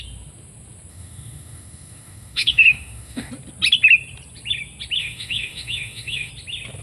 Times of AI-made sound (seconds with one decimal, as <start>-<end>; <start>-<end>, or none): 0.9-3.3; 5.0-6.3